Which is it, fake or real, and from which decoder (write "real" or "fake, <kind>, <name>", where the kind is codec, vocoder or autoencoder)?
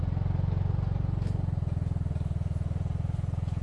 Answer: real